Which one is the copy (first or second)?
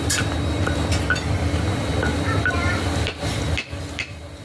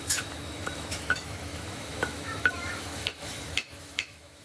second